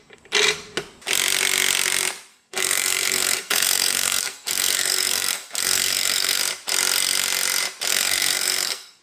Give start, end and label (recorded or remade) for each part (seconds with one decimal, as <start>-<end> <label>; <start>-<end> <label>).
0.0-2.3 recorded; 2.3-6.4 remade; 6.4-7.9 recorded; 7.9-9.0 remade